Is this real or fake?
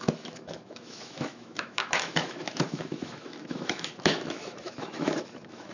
fake